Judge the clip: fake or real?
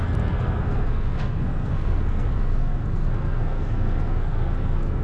fake